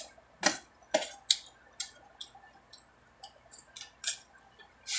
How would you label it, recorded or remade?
recorded